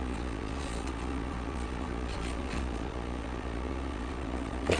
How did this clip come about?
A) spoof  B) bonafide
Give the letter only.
A